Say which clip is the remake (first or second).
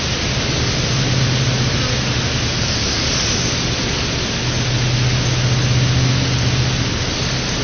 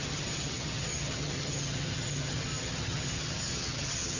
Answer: second